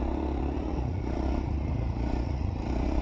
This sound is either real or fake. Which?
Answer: fake